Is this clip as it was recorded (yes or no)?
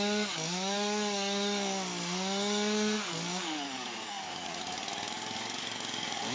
no